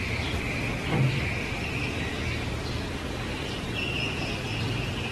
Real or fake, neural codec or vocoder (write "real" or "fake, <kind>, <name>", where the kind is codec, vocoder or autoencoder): real